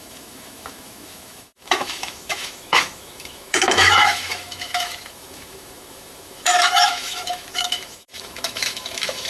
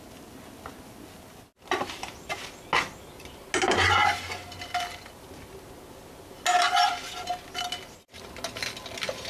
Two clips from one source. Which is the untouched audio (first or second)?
second